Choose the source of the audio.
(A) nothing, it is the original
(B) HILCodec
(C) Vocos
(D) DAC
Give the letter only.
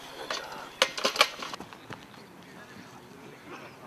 A